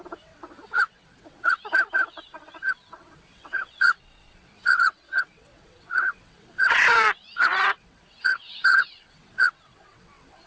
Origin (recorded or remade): remade